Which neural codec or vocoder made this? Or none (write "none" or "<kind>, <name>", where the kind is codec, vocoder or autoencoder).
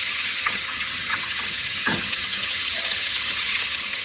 vocoder, HiFi-GAN